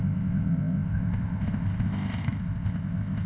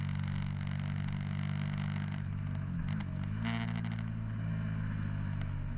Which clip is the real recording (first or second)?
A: second